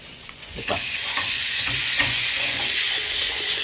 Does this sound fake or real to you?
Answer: fake